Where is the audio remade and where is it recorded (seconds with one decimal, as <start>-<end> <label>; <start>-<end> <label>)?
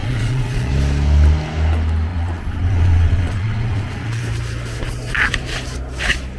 0.0-0.7 remade; 0.7-2.1 recorded; 2.1-4.2 remade; 4.2-6.4 recorded